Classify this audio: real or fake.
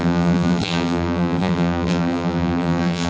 fake